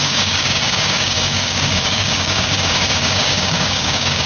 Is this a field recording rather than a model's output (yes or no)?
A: no